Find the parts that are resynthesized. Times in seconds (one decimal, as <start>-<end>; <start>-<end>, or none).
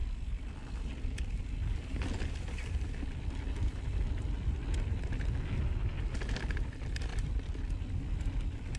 7.1-7.9